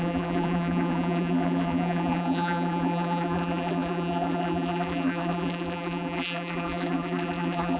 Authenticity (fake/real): fake